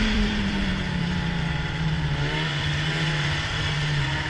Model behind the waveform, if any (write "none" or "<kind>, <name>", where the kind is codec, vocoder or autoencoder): vocoder, BigVGAN v2